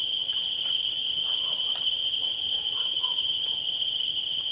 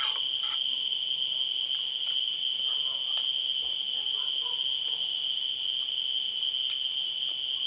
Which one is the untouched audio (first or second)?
second